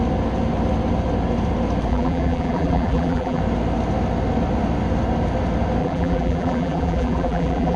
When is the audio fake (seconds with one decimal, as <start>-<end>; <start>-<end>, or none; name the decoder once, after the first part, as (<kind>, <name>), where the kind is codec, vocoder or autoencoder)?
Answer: 1.9-3.4 (vocoder, BigVGAN v2); 5.8-7.8